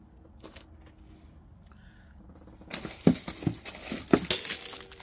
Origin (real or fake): real